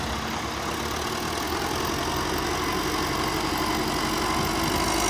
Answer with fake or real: real